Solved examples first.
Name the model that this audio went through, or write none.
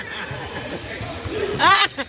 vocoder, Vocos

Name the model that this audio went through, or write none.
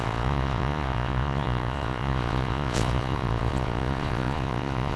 vocoder, Vocos